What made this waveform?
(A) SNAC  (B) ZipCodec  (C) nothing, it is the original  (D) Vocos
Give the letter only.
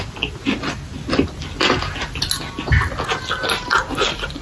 C